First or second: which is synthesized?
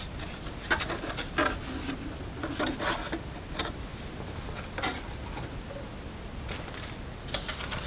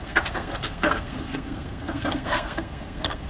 second